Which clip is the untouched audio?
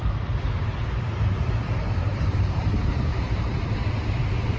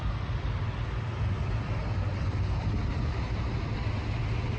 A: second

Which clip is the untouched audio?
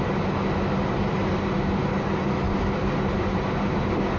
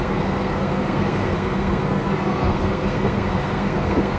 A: first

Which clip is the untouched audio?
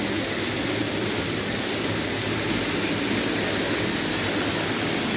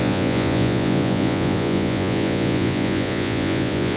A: first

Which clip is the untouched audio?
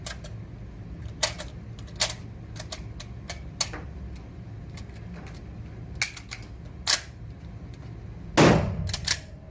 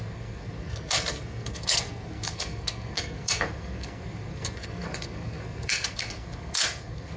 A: first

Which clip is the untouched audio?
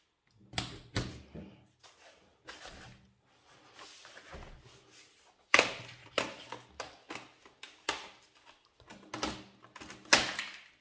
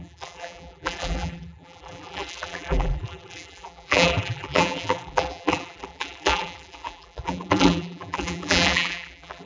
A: first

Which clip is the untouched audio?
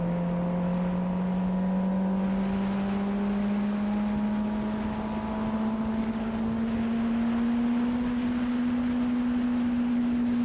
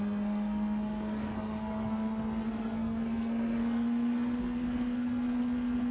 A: first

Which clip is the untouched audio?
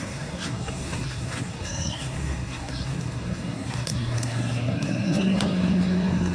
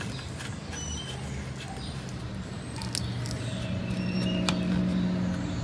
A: second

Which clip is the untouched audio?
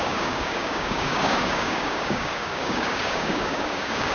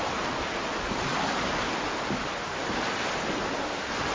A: second